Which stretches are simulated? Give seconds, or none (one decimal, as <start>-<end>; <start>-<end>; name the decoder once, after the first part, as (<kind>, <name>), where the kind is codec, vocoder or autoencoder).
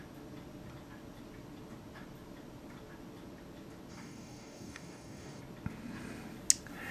3.9-5.4 (codec, DAC)